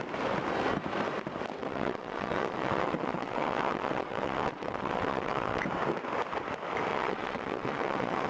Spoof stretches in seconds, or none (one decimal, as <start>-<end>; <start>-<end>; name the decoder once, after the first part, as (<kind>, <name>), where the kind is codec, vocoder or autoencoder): 1.6-5.6 (vocoder, WaveNeXt); 6.9-8.3